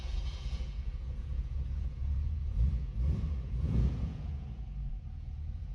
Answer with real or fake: fake